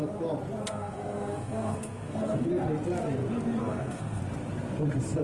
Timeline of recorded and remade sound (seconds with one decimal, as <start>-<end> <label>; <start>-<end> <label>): 0.0-0.6 recorded; 0.6-2.5 remade; 2.5-3.6 recorded; 3.6-4.2 remade; 4.2-5.2 recorded